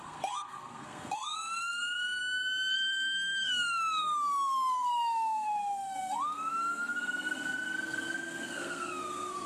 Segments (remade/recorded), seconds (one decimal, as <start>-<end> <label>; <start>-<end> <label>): 0.0-2.2 remade; 2.2-2.7 recorded; 2.7-9.5 remade